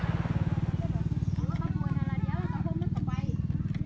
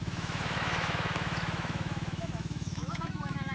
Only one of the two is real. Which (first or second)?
first